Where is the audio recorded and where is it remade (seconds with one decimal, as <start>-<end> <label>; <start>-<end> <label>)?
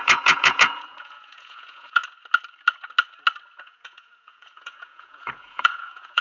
0.0-2.0 remade; 2.0-3.6 recorded; 3.6-6.2 remade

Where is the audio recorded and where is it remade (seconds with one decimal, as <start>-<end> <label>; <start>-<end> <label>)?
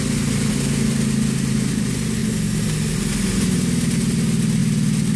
0.0-5.2 recorded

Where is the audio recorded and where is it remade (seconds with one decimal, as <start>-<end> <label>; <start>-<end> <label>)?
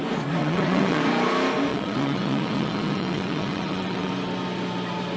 0.0-0.4 recorded; 0.4-1.0 remade; 1.0-1.7 recorded; 1.7-4.1 remade; 4.1-5.2 recorded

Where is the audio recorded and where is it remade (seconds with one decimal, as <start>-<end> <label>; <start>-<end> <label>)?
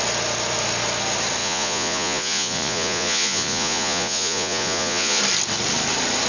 0.0-1.4 recorded; 1.4-5.2 remade; 5.2-6.3 recorded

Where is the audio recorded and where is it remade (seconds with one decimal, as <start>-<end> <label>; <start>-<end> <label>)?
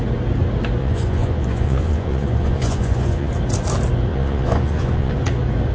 0.0-0.8 recorded; 0.8-3.3 remade; 3.3-4.1 recorded; 4.1-5.1 remade; 5.1-5.7 recorded